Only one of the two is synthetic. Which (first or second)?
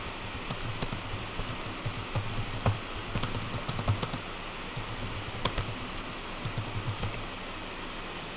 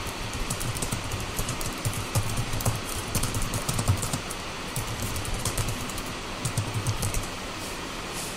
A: second